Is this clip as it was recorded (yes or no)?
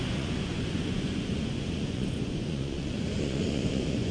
no